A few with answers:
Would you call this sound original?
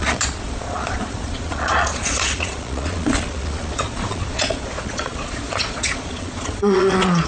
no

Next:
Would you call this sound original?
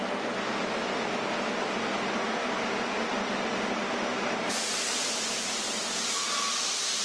yes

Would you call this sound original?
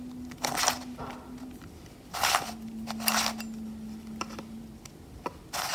yes